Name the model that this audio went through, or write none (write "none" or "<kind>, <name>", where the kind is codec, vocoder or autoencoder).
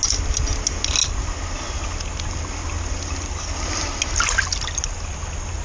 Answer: none